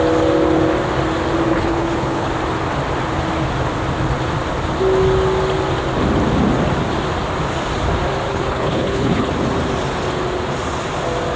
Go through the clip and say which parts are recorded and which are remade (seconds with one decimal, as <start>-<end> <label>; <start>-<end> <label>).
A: 0.0-1.5 recorded; 1.5-2.3 remade; 2.3-8.3 recorded; 8.3-9.3 remade; 9.3-11.4 recorded